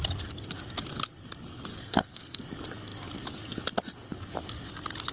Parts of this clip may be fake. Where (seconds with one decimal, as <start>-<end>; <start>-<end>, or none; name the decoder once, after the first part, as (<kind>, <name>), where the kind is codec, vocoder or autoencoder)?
1.7-2.4 (codec, SNAC)